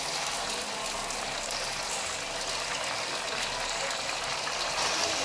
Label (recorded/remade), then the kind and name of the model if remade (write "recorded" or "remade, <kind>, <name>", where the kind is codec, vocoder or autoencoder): recorded